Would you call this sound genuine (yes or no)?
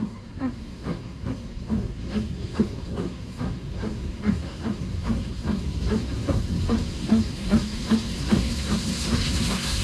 no